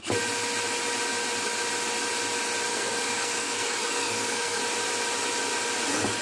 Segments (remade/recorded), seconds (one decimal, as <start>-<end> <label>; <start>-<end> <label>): 0.0-2.7 recorded; 2.7-4.6 remade; 4.6-6.2 recorded